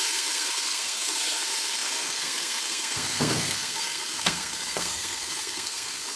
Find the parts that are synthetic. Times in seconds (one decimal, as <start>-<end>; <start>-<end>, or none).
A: 0.0-6.2

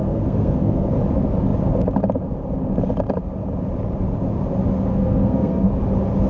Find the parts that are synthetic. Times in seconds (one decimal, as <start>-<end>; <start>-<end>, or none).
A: 0.0-0.9; 4.9-5.7

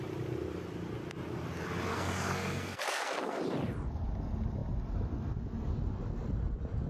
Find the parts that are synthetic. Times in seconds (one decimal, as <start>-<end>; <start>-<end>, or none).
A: 1.9-3.4

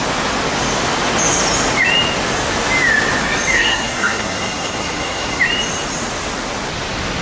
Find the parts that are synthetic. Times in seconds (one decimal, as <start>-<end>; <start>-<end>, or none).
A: 3.5-5.4

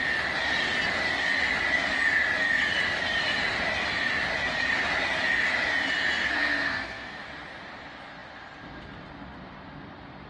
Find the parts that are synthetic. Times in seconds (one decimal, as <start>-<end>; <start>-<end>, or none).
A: 6.2-7.2

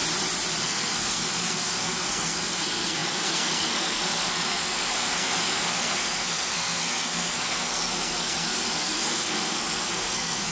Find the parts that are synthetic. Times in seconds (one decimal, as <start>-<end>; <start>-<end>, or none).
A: 0.6-10.5